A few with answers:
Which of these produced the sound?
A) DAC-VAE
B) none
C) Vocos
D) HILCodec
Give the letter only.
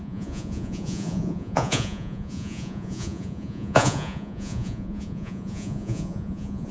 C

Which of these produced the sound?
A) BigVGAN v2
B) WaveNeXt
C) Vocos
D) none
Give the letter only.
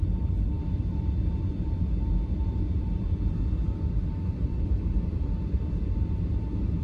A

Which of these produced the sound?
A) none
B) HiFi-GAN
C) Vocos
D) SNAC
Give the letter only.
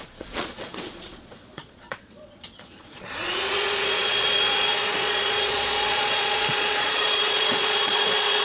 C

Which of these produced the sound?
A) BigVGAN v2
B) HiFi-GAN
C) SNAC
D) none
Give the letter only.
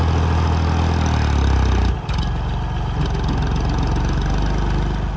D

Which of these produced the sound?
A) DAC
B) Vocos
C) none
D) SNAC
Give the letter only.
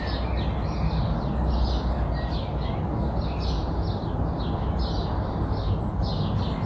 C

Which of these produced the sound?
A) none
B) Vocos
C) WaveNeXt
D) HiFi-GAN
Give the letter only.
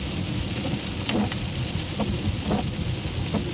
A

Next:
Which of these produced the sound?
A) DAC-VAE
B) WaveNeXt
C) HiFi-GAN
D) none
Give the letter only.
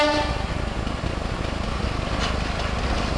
D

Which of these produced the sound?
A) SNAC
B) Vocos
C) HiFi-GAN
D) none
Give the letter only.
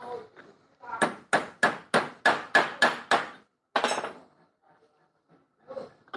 D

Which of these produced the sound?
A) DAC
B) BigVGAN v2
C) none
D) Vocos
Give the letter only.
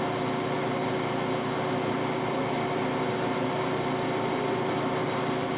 C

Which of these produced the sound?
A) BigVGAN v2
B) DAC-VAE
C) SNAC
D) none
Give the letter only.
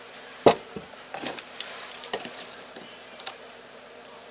A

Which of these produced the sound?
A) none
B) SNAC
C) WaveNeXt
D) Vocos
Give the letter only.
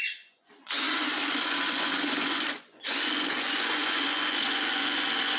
D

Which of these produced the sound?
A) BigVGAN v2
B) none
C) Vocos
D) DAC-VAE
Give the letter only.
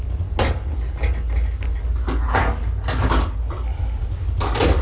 B